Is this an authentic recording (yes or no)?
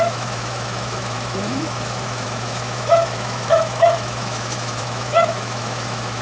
no